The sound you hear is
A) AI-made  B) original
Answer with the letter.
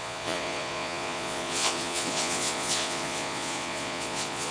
A